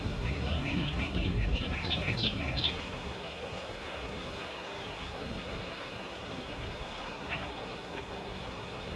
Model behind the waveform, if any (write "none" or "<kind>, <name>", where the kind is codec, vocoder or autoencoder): codec, SNAC